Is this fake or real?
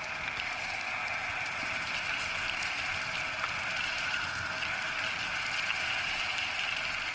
real